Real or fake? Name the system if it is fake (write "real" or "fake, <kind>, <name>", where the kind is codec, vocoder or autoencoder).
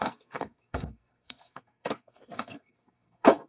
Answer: fake, codec, SNAC